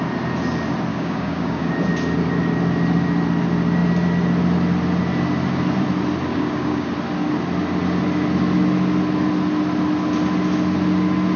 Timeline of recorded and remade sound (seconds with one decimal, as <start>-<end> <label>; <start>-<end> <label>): 0.0-0.9 recorded; 0.9-1.7 remade; 1.7-6.3 recorded; 6.3-6.9 remade; 6.9-11.4 recorded